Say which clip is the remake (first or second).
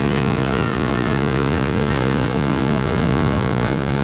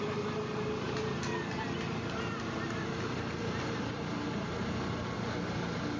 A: first